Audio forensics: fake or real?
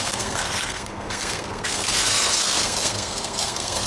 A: fake